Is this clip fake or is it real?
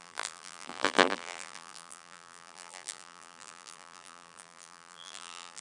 fake